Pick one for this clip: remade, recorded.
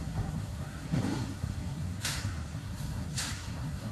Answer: remade